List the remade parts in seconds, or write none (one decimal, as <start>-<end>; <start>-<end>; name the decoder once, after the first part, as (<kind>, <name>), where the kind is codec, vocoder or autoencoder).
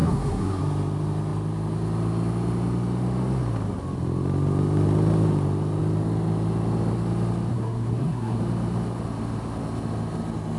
0.0-0.6 (codec, SNAC); 7.5-8.4